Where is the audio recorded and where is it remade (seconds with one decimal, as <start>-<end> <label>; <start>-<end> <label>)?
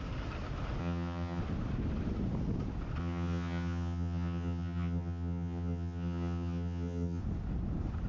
0.0-0.8 recorded; 0.8-1.4 remade; 1.4-3.0 recorded; 3.0-7.2 remade; 7.2-8.1 recorded